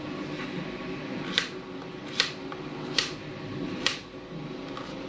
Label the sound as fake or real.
real